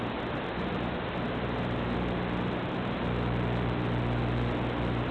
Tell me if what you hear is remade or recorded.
recorded